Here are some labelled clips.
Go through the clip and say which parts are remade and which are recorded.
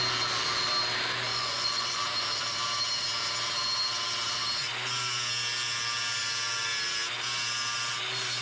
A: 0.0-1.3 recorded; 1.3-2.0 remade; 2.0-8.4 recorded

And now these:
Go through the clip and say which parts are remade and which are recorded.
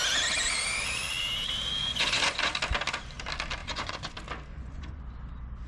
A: 0.0-1.8 recorded; 1.8-2.5 remade; 2.5-3.6 recorded; 3.6-4.1 remade; 4.1-4.5 recorded; 4.5-5.0 remade; 5.0-5.7 recorded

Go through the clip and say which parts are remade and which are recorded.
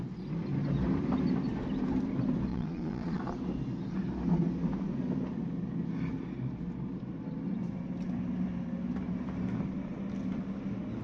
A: 0.0-2.5 recorded; 2.5-3.2 remade; 3.2-11.0 recorded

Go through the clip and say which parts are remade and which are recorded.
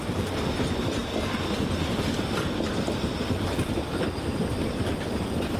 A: 0.0-5.6 recorded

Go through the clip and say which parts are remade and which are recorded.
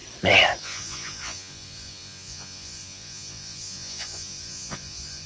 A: 0.0-0.6 recorded; 0.6-5.3 remade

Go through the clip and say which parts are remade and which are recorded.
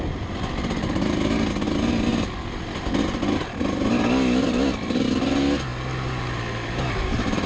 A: 0.0-7.5 recorded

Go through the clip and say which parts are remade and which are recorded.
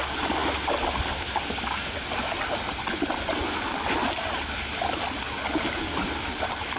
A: 0.0-6.8 recorded